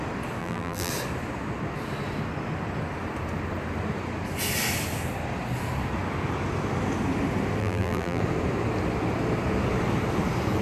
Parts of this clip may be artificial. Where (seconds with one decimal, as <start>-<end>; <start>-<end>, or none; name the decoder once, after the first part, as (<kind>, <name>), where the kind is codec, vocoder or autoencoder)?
0.4-0.9 (vocoder, BigVGAN v2); 7.6-8.2